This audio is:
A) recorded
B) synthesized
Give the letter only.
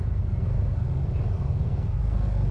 B